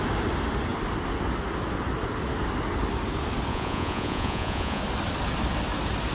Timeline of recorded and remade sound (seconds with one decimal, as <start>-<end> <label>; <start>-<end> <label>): 0.0-3.5 recorded; 3.5-4.8 remade; 4.8-6.1 recorded